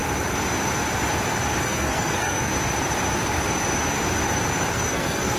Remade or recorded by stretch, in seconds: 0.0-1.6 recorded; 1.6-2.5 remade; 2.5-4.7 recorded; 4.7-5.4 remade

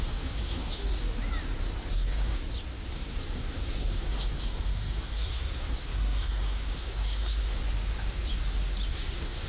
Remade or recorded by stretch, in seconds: 0.0-0.8 remade; 0.8-1.9 recorded; 1.9-2.4 remade; 2.4-2.9 recorded; 2.9-7.6 remade; 7.6-8.9 recorded; 8.9-9.5 remade

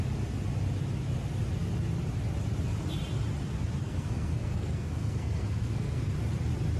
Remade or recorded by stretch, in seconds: 0.0-3.8 recorded; 3.8-6.1 remade; 6.1-6.8 recorded